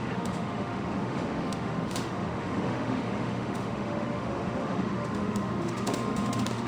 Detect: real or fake fake